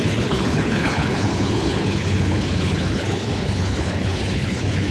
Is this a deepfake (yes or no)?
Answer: yes